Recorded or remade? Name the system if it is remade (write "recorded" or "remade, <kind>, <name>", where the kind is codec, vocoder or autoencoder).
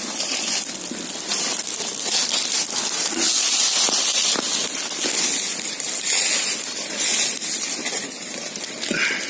recorded